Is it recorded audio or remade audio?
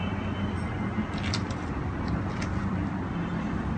recorded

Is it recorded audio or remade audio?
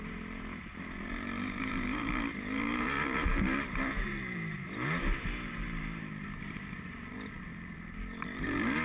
remade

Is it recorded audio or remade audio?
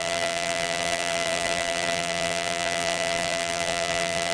remade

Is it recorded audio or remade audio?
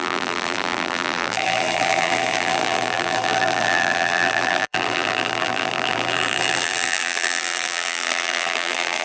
remade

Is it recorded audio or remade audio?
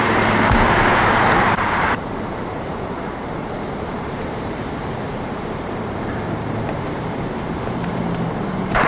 remade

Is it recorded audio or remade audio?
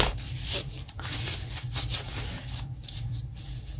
remade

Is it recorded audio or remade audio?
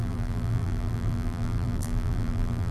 remade